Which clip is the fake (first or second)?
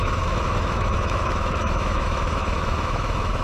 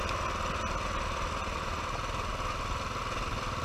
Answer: first